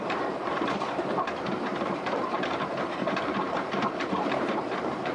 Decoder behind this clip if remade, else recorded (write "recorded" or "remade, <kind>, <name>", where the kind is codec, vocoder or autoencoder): remade, vocoder, BigVGAN v2